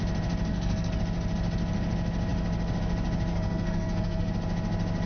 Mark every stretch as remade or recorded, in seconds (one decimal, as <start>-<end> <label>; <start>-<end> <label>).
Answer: 0.0-0.5 recorded; 0.5-1.0 remade; 1.0-3.3 recorded; 3.3-4.3 remade; 4.3-5.1 recorded